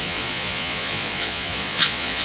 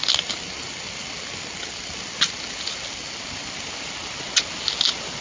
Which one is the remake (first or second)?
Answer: first